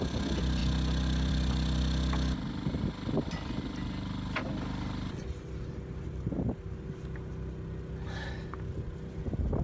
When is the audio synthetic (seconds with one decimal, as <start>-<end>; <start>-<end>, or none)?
none